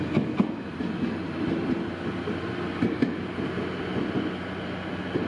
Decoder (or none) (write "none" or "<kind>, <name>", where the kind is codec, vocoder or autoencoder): none